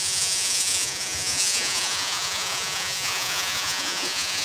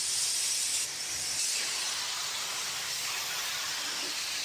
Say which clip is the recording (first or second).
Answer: second